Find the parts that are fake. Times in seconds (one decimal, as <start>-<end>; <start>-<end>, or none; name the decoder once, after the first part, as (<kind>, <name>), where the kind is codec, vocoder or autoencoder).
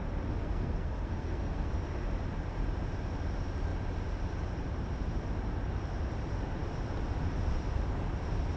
0.4-1.7 (codec, SNAC)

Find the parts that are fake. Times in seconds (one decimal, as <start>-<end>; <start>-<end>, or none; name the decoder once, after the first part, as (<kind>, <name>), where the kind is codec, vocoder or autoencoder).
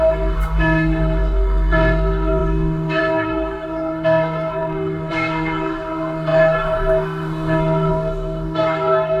0.0-9.2 (codec, SNAC)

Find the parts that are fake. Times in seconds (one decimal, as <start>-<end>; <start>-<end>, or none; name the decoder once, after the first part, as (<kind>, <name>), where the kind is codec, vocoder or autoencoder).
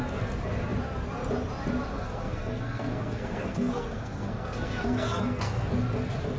1.9-5.7 (codec, SNAC)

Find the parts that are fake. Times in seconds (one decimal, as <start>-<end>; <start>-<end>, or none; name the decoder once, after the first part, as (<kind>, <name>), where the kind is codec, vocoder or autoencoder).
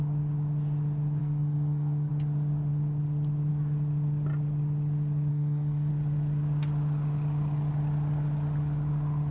1.2-2.1 (codec, SNAC); 5.3-5.9